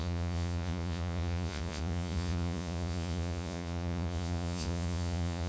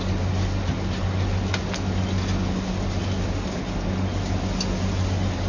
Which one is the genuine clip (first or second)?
second